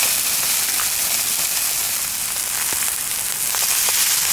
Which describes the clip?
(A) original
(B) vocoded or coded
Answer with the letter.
A